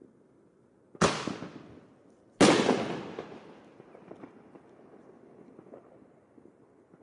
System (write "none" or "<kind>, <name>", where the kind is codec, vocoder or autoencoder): none